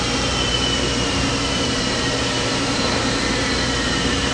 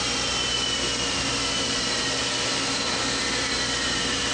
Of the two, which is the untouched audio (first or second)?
second